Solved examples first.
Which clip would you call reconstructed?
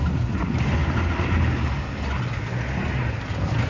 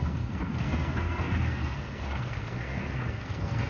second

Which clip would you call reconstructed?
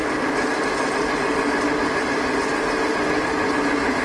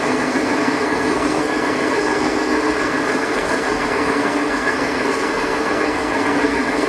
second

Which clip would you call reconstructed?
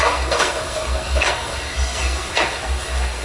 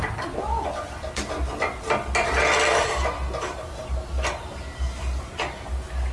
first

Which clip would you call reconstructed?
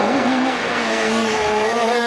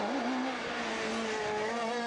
first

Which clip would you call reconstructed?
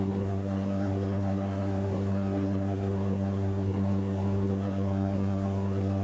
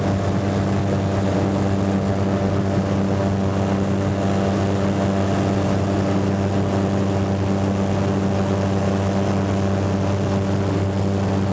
first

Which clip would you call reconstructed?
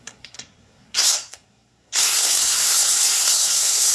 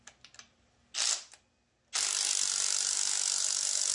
first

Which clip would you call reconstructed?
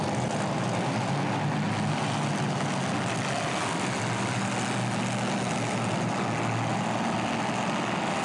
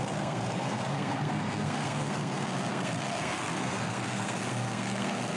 second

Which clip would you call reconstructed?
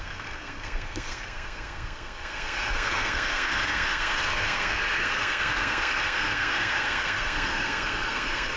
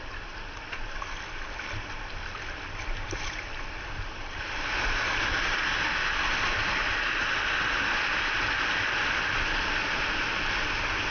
first